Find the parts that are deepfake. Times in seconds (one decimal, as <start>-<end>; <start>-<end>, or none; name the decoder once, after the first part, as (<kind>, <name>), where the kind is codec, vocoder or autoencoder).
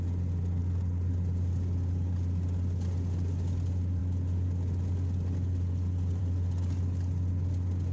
none